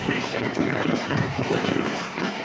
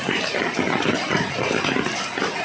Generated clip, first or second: first